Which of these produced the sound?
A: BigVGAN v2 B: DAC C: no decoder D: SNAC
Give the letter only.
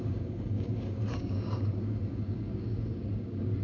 B